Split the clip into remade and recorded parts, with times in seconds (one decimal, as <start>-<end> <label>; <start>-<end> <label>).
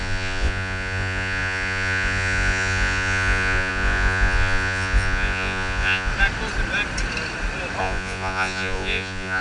0.0-6.1 remade; 6.1-7.8 recorded; 7.8-9.4 remade